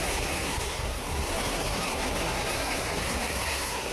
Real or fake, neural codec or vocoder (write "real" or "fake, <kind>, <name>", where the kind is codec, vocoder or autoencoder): fake, codec, SNAC